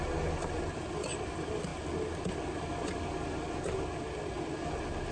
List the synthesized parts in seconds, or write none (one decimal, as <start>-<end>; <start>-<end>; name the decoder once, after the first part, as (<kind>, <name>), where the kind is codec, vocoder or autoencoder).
none